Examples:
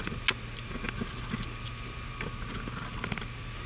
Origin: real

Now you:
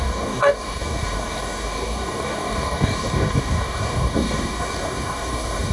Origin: fake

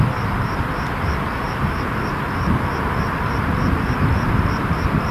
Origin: real